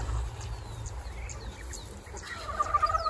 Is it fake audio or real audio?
real